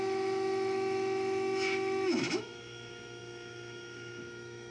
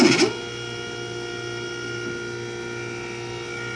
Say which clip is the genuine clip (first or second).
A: second